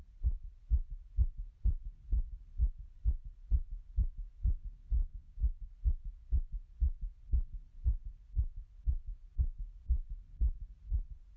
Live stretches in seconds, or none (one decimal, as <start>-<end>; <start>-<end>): 0.0-5.0; 5.7-11.4